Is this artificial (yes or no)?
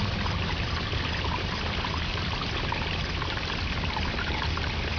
no